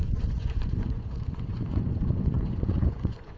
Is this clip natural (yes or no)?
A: no